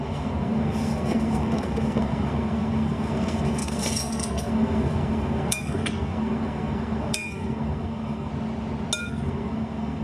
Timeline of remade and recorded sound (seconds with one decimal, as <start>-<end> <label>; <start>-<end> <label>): 0.0-8.3 remade; 8.3-9.0 recorded; 9.0-10.0 remade